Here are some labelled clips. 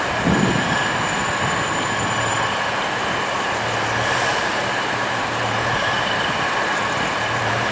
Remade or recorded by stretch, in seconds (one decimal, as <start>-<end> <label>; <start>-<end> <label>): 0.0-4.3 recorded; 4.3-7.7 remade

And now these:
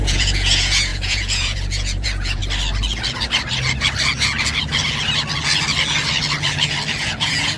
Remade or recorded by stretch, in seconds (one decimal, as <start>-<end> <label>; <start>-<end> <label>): 0.0-2.4 remade; 2.4-7.0 recorded; 7.0-7.6 remade

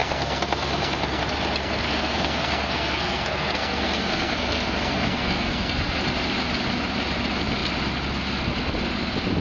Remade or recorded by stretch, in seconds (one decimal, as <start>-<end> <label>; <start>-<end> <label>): 0.0-1.2 remade; 1.2-1.6 recorded; 1.6-6.0 remade; 6.0-9.4 recorded

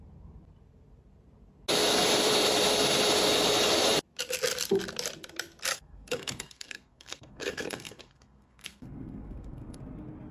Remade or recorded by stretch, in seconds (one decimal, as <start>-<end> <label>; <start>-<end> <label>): 0.0-5.7 recorded; 5.7-9.8 remade; 9.8-10.3 recorded